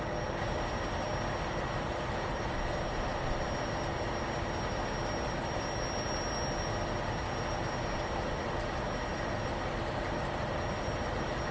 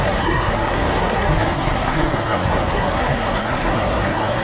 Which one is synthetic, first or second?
second